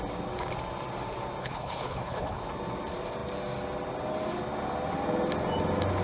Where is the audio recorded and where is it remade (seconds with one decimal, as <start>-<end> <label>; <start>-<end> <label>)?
0.0-1.4 recorded; 1.4-2.4 remade; 2.4-6.0 recorded